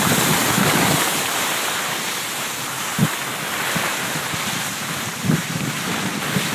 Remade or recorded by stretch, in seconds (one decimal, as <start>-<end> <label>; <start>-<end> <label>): 0.0-6.5 recorded